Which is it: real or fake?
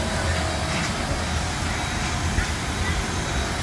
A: real